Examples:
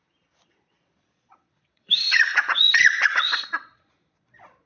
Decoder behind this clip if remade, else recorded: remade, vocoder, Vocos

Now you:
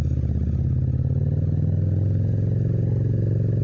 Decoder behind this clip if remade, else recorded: recorded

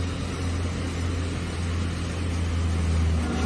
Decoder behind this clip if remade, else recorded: recorded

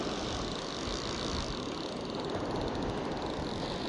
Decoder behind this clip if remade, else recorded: recorded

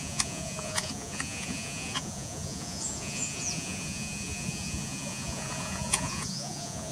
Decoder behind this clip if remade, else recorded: remade, vocoder, Vocos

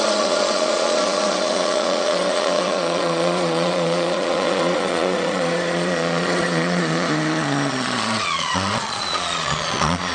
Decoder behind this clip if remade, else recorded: remade, vocoder, Vocos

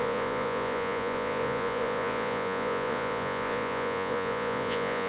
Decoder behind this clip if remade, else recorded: remade, vocoder, Vocos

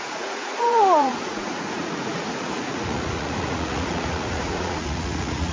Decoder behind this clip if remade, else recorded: remade, vocoder, Vocos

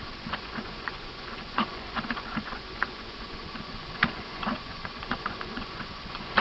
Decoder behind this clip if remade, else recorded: remade, vocoder, Vocos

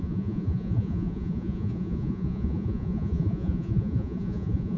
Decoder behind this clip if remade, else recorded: remade, vocoder, Vocos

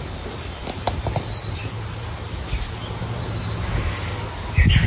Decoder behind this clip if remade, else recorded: recorded